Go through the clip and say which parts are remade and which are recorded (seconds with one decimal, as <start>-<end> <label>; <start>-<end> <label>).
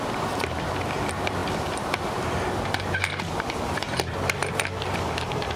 0.0-5.6 recorded